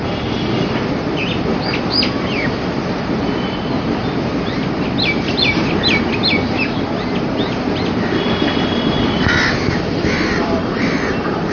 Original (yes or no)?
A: no